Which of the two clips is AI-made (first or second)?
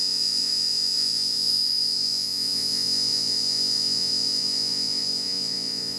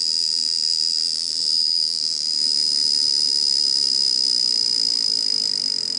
first